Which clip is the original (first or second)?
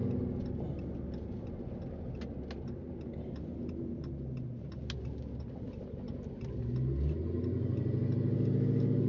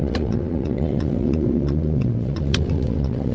first